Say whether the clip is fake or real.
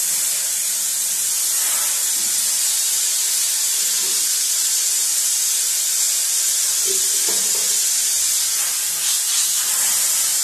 real